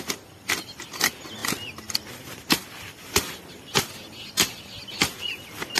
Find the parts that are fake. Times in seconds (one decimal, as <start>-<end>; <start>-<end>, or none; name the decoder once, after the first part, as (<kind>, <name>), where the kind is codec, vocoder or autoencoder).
none